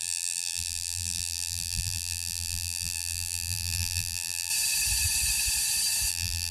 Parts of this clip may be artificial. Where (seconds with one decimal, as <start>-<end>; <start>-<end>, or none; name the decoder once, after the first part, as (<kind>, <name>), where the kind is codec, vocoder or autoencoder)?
0.0-4.5 (vocoder, BigVGAN v2); 6.1-6.5